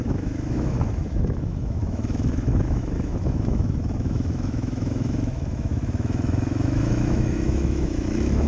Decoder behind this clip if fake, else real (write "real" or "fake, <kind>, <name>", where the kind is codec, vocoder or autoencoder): fake, autoencoder, DAC-VAE